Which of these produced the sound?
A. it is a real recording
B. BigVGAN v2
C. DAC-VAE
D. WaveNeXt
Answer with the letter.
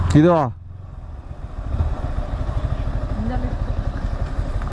A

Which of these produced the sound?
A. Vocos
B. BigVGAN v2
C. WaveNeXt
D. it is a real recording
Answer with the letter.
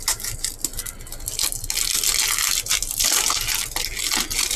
D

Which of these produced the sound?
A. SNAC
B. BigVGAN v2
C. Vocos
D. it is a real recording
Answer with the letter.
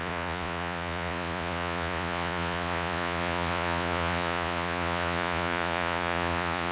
C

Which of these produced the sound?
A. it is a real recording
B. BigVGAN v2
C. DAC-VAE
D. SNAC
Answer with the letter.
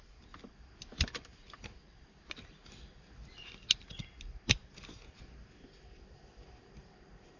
A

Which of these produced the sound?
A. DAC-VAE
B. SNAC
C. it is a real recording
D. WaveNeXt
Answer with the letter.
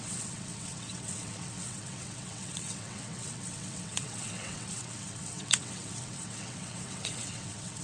D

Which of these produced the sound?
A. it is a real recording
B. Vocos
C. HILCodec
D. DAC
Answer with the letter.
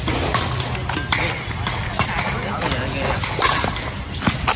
A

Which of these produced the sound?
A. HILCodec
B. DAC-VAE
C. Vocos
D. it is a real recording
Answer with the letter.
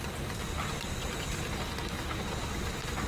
D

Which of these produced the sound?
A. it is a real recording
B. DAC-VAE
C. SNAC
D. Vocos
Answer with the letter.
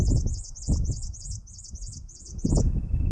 B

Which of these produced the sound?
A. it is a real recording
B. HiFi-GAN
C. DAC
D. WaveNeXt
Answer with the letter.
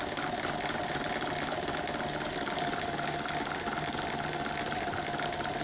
A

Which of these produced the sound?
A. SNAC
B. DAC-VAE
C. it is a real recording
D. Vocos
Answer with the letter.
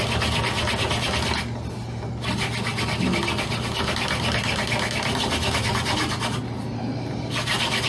C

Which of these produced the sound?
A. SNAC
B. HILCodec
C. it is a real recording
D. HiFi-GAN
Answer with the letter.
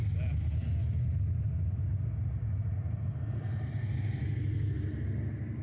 C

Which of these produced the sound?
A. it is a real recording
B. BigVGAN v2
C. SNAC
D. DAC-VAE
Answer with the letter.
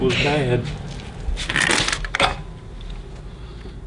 A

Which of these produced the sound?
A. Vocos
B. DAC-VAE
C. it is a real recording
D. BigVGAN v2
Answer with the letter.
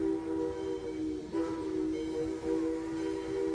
C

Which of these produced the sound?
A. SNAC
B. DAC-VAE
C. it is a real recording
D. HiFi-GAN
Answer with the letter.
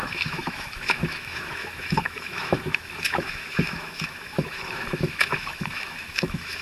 B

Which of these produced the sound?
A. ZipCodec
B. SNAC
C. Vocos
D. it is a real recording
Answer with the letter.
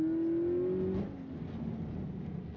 D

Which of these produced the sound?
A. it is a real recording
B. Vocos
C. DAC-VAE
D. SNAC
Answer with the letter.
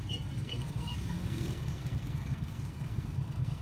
D